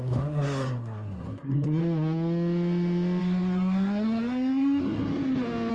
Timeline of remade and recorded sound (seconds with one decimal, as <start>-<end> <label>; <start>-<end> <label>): 0.0-1.8 remade; 1.8-3.2 recorded; 3.2-5.1 remade; 5.1-5.7 recorded